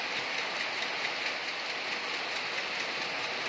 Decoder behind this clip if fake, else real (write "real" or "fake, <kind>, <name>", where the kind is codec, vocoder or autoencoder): real